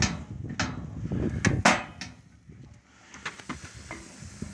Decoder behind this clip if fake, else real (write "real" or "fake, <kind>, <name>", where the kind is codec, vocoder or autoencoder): real